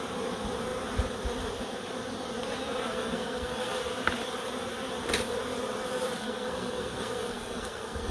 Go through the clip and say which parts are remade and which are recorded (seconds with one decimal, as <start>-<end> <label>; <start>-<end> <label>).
0.0-2.9 recorded; 2.9-3.8 remade; 3.8-6.2 recorded; 6.2-8.1 remade